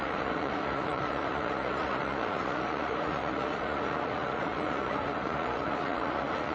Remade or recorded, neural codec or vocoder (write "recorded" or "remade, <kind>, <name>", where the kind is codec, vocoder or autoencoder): remade, vocoder, Vocos